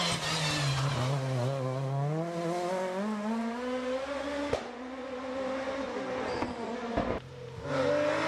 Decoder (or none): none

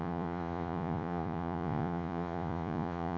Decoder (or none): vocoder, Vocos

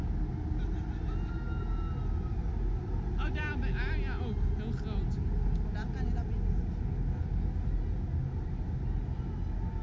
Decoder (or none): none